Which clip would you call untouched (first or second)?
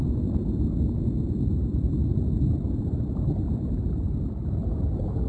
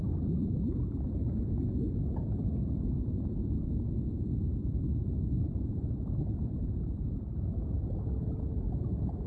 first